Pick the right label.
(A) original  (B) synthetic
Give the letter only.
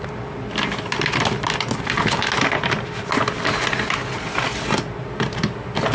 A